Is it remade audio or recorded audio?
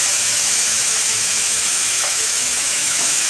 remade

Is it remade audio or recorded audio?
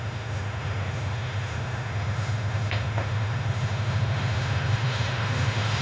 remade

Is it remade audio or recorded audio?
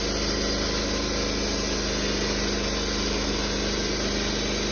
recorded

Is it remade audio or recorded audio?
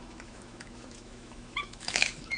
remade